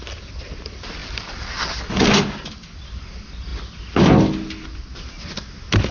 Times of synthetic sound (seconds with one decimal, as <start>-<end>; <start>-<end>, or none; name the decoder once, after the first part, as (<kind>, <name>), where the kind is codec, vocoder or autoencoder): 0.0-3.5 (vocoder, BigVGAN v2)